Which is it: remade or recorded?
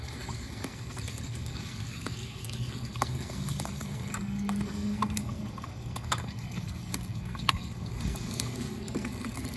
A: remade